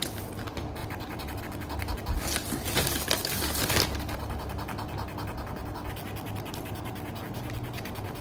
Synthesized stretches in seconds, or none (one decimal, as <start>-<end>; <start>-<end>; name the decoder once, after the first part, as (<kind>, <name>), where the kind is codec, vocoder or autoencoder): 0.8-1.4 (vocoder, BigVGAN v2)